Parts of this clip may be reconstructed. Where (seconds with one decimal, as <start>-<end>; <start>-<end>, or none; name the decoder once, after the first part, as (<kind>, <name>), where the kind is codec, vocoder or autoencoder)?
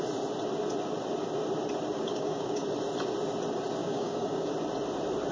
2.1-2.6 (codec, DAC); 3.8-4.5